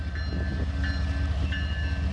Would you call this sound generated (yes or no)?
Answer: no